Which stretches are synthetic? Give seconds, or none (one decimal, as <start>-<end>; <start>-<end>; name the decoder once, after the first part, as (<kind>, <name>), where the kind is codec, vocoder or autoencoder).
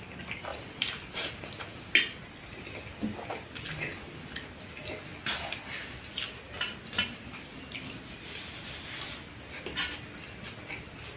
0.5-1.9 (vocoder, BigVGAN v2)